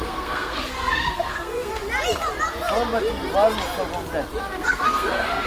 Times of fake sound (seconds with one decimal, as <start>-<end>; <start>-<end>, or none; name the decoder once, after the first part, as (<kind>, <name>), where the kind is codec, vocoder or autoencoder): 0.0-1.8 (codec, SNAC); 4.4-5.5